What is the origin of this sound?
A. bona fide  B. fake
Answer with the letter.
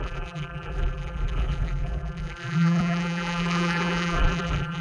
B